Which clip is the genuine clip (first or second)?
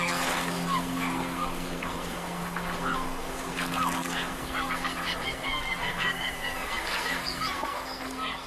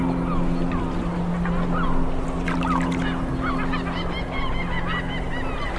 second